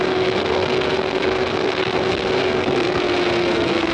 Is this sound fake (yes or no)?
yes